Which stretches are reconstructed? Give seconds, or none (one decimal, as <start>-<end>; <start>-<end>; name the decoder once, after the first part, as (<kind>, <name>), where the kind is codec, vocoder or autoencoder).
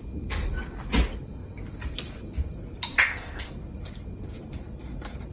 2.9-3.5 (codec, ZipCodec)